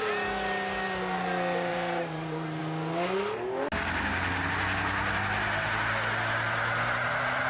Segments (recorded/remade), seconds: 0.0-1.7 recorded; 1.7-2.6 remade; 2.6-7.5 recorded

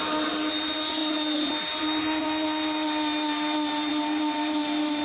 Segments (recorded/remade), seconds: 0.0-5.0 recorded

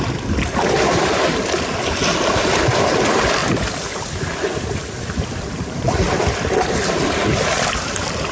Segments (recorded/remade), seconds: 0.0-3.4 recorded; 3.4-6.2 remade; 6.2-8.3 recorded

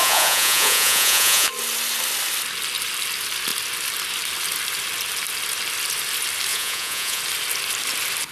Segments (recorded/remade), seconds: 0.0-1.5 remade; 1.5-6.5 recorded; 6.5-7.2 remade; 7.2-8.3 recorded

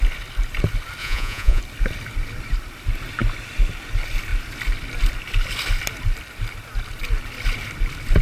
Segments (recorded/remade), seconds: 0.0-1.0 recorded; 1.0-1.6 remade; 1.6-8.2 recorded

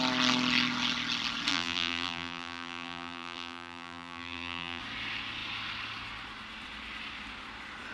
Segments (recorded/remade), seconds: 0.0-1.5 recorded; 1.5-4.8 remade; 4.8-7.9 recorded